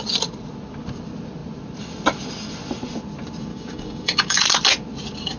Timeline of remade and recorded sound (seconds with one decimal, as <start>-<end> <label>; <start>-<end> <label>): 0.0-3.5 recorded; 3.5-4.4 remade; 4.4-5.4 recorded